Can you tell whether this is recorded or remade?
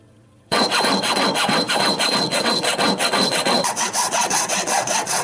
remade